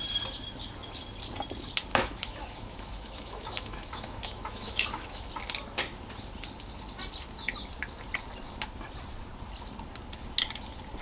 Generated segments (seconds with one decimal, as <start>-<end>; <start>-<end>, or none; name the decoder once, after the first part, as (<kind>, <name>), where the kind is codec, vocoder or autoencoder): 1.9-5.3 (autoencoder, DAC-VAE)